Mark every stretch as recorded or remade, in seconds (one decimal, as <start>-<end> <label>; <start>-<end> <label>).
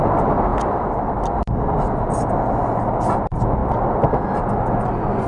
0.0-5.3 recorded